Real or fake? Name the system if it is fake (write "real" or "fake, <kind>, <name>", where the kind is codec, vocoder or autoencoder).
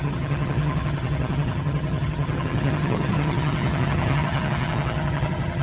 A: fake, vocoder, HiFi-GAN